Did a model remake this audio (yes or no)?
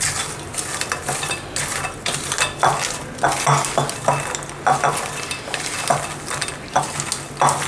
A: no